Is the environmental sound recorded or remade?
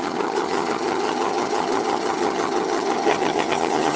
remade